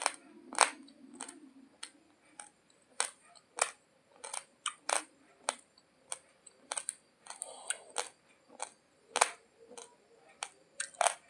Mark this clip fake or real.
real